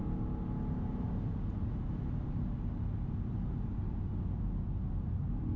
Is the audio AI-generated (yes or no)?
no